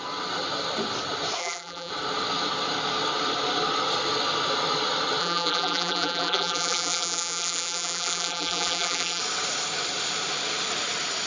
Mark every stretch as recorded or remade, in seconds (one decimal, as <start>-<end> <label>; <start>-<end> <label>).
0.0-1.4 recorded; 1.4-1.9 remade; 1.9-5.2 recorded; 5.2-9.2 remade; 9.2-11.3 recorded